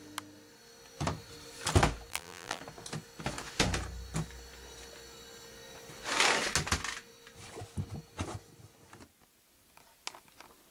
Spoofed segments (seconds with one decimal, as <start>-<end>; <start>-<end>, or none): 2.1-2.6